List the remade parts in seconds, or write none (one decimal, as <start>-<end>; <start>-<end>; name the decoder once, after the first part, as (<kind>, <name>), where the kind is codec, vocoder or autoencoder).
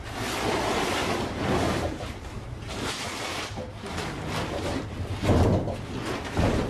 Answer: 1.0-5.0 (vocoder, BigVGAN v2)